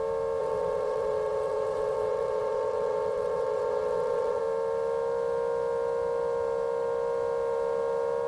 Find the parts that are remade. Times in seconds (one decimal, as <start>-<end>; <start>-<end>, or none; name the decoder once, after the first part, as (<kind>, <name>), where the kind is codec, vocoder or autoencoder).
0.4-4.4 (vocoder, WaveNeXt)